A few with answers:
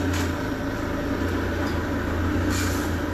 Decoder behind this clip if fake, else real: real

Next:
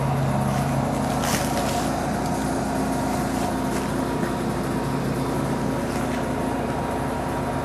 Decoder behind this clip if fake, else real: real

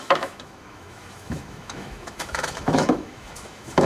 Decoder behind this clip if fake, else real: fake, autoencoder, DAC-VAE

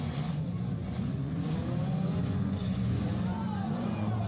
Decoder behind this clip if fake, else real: fake, vocoder, Vocos